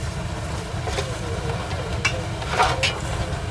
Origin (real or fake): real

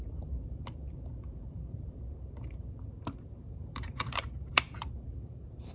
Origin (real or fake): fake